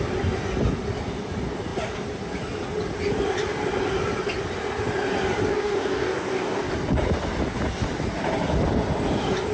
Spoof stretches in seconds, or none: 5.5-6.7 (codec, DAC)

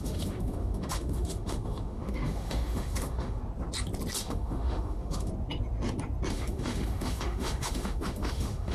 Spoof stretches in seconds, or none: 0.0-3.4 (autoencoder, DAC-VAE); 4.2-5.3; 6.3-8.7

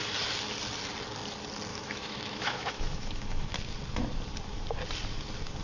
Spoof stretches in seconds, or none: 1.7-3.5 (autoencoder, DAC-VAE)

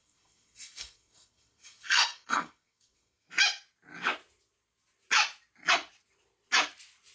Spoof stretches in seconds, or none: 0.0-3.3 (codec, SNAC)

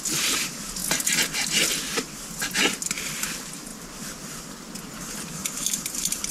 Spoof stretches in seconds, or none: 0.0-0.8 (vocoder, BigVGAN v2); 3.0-3.7; 5.0-6.3

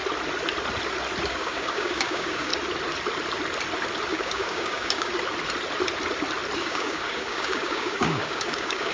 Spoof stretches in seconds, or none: 1.3-2.5 (codec, DAC); 4.1-5.1; 6.6-8.9

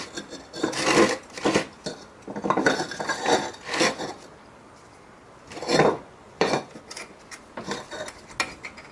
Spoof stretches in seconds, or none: 5.9-7.2 (vocoder, Vocos)